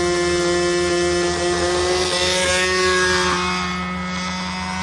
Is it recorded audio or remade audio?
recorded